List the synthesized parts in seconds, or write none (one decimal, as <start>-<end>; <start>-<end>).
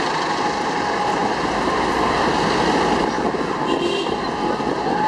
none